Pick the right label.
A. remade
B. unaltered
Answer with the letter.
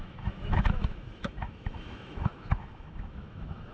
A